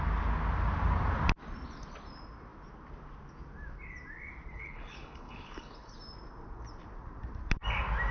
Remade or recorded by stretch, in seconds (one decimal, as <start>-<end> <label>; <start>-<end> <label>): 0.0-4.5 recorded; 4.5-5.9 remade; 5.9-8.1 recorded